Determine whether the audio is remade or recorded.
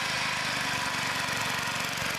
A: recorded